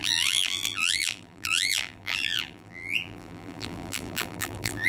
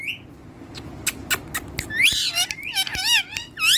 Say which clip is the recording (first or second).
second